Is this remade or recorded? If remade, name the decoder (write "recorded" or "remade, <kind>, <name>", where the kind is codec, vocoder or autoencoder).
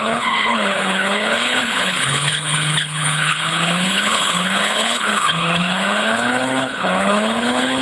remade, codec, HILCodec